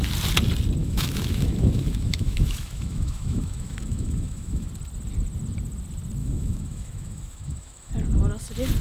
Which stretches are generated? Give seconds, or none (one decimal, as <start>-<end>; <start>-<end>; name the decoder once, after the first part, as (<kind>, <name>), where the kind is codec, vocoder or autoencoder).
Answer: 0.8-4.7 (autoencoder, DAC-VAE); 6.2-7.9